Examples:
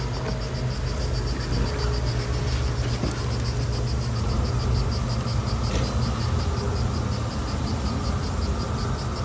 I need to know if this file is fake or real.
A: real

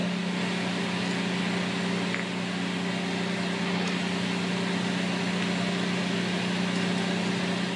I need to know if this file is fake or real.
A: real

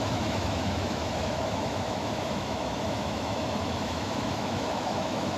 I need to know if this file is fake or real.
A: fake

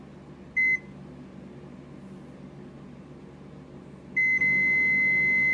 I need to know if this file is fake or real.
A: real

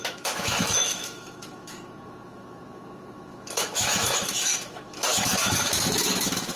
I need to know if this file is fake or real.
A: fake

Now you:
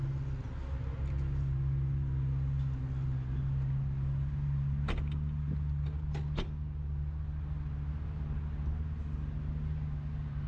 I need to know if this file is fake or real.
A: real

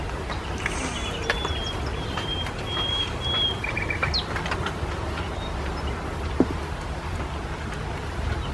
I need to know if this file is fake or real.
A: real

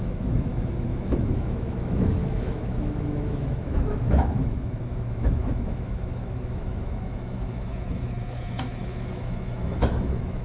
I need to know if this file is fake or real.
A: fake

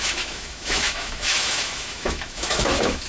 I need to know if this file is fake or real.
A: fake